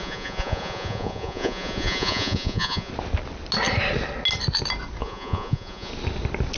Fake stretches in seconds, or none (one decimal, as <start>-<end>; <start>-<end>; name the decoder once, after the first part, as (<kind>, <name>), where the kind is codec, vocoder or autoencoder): 0.0-2.9 (vocoder, Vocos); 5.0-5.9

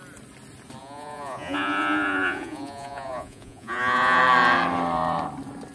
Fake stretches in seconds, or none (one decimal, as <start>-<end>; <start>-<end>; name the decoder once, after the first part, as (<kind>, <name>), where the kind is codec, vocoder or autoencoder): 0.8-4.2 (vocoder, Vocos)

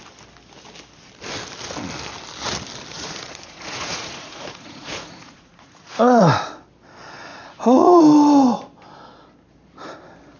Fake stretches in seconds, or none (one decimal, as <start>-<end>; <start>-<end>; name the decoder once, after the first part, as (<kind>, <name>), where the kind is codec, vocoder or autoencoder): 2.9-6.2 (vocoder, Vocos); 7.3-8.0